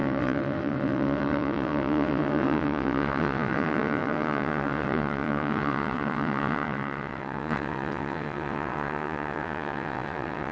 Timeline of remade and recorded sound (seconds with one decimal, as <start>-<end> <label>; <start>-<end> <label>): 0.0-10.5 remade